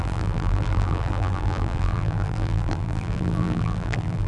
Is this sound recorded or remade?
remade